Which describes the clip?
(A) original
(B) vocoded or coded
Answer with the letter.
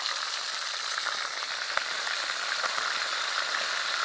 A